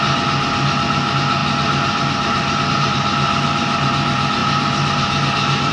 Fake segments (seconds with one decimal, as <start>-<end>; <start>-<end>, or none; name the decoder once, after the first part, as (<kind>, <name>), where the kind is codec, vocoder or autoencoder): none